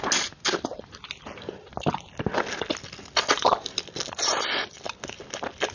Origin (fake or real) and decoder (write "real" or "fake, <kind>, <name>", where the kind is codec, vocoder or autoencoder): real